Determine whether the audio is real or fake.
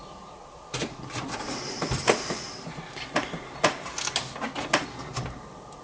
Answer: real